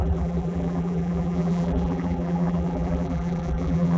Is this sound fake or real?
fake